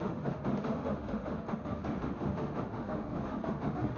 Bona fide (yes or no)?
no